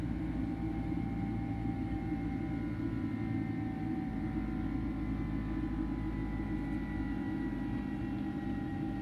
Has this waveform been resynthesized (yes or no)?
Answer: no